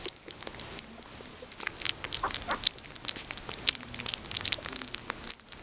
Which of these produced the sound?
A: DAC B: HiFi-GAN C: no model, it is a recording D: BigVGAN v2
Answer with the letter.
C